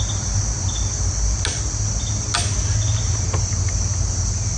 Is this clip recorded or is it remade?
recorded